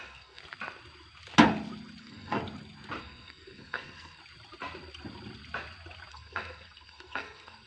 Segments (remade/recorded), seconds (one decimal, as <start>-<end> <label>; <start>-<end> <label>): 0.0-0.4 remade; 0.4-2.0 recorded; 2.0-2.4 remade; 2.4-3.0 recorded; 3.0-4.2 remade; 4.2-6.1 recorded; 6.1-7.7 remade